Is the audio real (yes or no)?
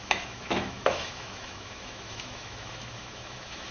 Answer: no